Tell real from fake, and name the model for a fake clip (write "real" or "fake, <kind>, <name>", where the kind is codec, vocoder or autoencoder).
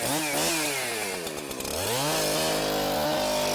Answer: real